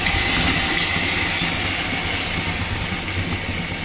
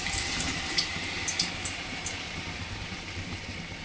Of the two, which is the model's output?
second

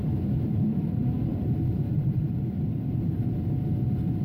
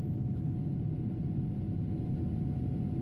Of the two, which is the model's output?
first